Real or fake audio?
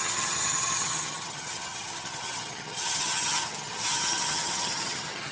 fake